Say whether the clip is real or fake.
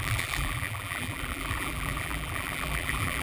fake